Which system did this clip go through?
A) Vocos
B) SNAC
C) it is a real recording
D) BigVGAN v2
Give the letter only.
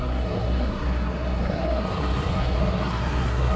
B